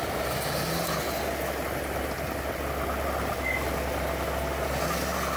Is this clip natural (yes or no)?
yes